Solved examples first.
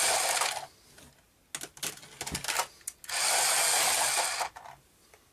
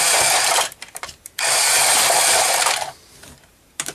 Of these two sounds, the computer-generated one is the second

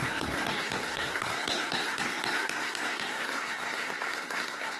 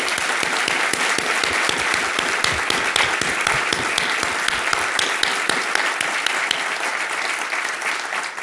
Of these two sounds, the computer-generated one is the first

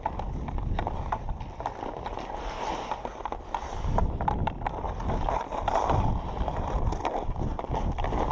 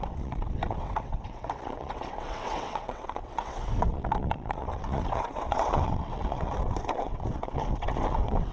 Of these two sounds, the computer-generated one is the second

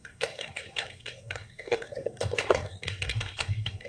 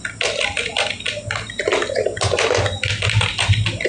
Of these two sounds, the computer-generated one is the first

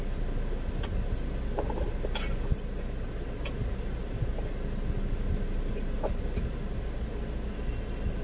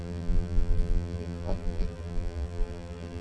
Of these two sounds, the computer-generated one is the second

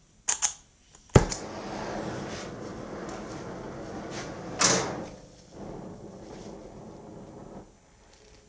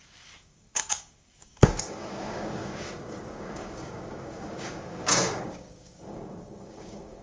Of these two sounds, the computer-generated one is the second